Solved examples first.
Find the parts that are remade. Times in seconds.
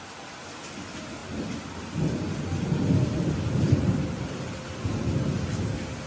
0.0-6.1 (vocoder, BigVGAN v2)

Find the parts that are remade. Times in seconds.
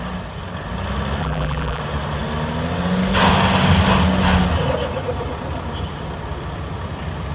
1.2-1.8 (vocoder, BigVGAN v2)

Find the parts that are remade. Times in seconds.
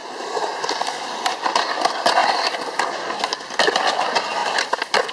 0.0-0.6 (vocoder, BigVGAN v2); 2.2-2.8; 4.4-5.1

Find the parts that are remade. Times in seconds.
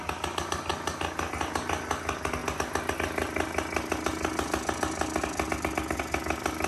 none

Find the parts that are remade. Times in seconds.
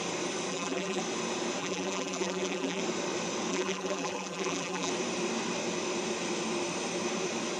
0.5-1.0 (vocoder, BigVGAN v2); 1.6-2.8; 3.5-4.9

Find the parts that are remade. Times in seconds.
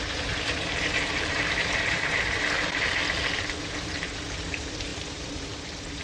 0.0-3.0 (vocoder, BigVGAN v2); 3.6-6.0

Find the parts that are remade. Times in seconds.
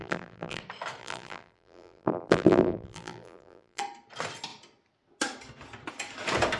0.0-0.6 (vocoder, BigVGAN v2); 1.0-3.8